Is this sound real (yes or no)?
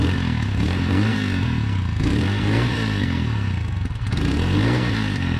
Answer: no